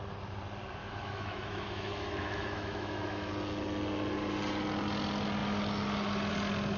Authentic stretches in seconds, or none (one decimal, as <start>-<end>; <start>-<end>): 0.0-0.8; 3.3-6.8